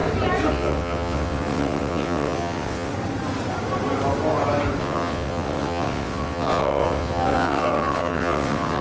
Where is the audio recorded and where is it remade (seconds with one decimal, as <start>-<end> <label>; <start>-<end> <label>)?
0.0-0.5 recorded; 0.5-2.9 remade; 2.9-4.8 recorded; 4.8-8.8 remade